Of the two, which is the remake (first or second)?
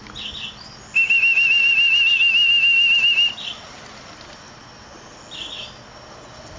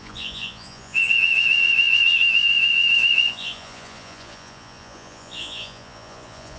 second